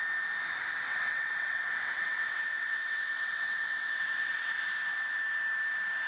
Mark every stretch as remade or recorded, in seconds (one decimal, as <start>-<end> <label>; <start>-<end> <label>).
0.0-0.9 recorded; 0.9-4.6 remade; 4.6-6.1 recorded